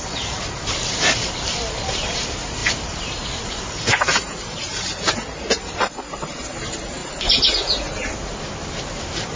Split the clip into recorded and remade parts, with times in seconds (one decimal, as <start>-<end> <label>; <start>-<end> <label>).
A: 0.0-7.0 remade; 7.0-9.0 recorded; 9.0-9.4 remade